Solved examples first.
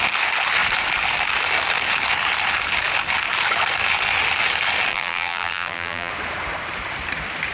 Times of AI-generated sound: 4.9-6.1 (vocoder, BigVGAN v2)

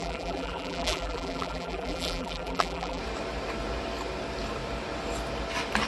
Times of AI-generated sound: 0.0-3.0 (vocoder, BigVGAN v2)

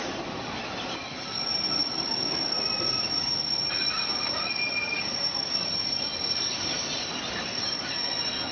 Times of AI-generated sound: none

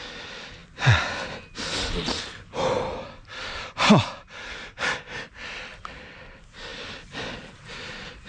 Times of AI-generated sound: none

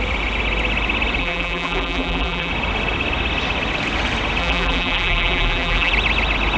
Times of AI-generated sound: 1.2-2.5 (vocoder, BigVGAN v2); 4.4-5.9

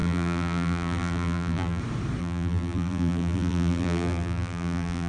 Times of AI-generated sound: 0.0-1.8 (vocoder, BigVGAN v2); 2.2-5.1